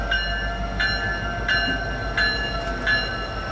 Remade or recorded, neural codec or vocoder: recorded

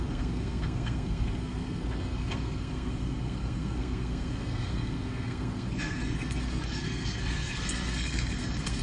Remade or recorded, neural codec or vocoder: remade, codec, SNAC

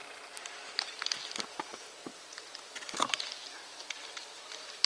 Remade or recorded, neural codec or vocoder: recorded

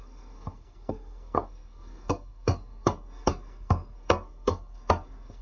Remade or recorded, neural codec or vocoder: remade, codec, SNAC